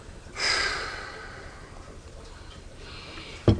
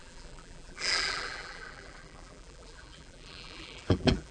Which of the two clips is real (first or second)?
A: first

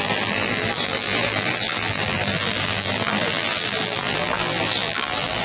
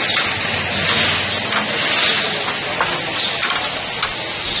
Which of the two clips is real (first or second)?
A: second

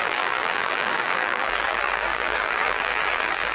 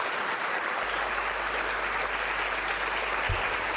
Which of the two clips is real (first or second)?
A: second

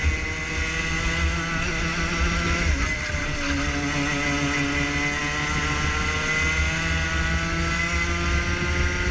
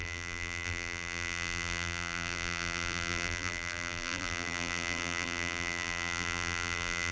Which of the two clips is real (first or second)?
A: first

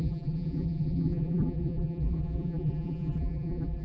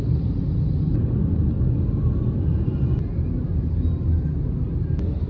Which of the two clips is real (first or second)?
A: second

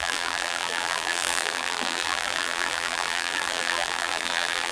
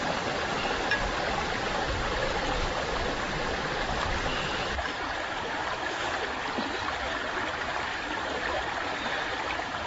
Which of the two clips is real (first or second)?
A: second